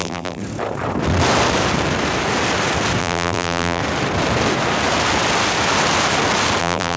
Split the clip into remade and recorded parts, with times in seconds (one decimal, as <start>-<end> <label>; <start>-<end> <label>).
0.0-0.4 remade; 0.4-3.0 recorded; 3.0-3.8 remade; 3.8-6.6 recorded; 6.6-7.0 remade